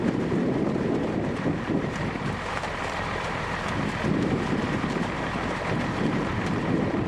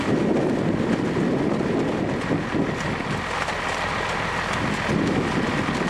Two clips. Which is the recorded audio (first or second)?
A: second